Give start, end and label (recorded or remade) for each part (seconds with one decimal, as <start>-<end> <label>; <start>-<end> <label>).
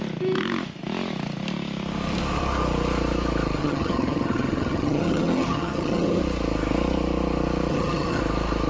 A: 0.0-3.6 recorded; 3.6-6.2 remade; 6.2-7.7 recorded; 7.7-8.2 remade; 8.2-8.7 recorded